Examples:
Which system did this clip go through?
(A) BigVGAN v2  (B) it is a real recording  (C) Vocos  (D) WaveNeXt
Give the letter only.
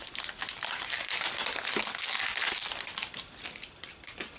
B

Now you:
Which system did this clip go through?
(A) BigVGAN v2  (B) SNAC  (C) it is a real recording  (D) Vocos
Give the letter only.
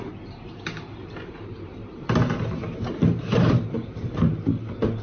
A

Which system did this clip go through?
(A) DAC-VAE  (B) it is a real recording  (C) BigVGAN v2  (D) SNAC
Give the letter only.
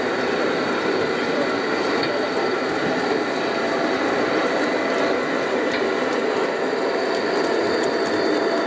B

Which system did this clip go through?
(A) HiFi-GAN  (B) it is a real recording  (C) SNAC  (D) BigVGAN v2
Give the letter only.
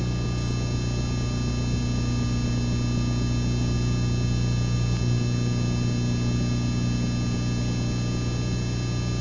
B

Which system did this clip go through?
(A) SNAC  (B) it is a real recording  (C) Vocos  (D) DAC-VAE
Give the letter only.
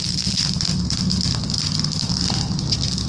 B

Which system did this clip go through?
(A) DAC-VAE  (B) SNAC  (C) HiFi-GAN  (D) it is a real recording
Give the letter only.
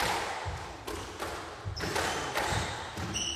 D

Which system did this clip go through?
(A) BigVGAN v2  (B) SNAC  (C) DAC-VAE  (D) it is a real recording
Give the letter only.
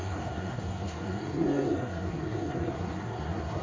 B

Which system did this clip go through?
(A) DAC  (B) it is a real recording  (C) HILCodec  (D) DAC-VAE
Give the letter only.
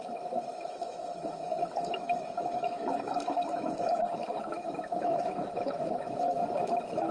D